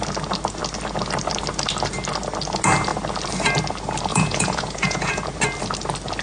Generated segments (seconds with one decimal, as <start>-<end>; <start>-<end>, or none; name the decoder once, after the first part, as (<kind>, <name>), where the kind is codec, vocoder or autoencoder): 4.1-5.2 (vocoder, Vocos)